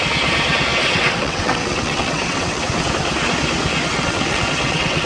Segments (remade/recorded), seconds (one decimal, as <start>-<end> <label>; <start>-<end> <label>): 0.0-0.8 recorded; 0.8-2.9 remade; 2.9-3.9 recorded; 3.9-5.1 remade